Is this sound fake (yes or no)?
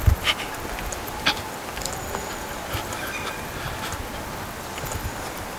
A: no